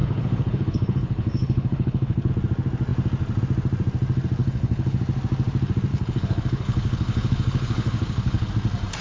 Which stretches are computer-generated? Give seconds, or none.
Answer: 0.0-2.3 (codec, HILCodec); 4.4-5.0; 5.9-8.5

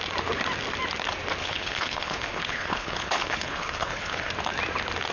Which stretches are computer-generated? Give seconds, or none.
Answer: 1.4-4.3 (codec, HILCodec)

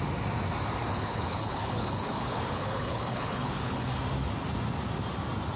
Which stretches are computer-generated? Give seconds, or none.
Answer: 0.9-4.0 (codec, HILCodec)

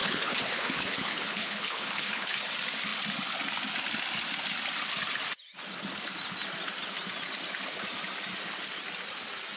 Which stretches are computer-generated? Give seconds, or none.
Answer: 0.0-2.4 (codec, HILCodec)

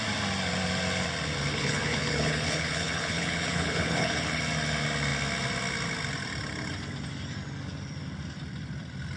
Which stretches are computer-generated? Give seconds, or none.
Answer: 1.5-4.4 (codec, HILCodec)

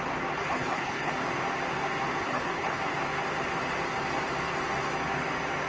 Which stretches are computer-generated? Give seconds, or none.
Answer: 0.4-1.1 (codec, HILCodec); 2.2-2.8

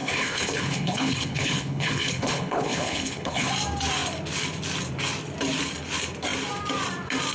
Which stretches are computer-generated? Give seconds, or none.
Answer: 0.0-3.5 (codec, HILCodec)

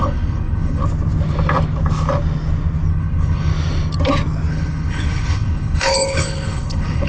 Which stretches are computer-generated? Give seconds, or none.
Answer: 0.0-0.8 (codec, HILCodec); 2.9-3.5; 4.5-7.1